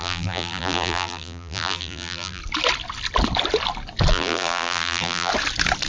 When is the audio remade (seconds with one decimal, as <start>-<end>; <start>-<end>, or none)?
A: 0.0-2.4; 4.1-5.3

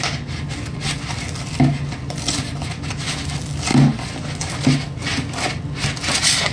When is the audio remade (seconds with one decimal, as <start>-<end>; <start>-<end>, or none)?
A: none